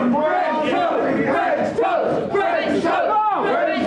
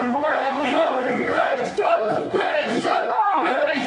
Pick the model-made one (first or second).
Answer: second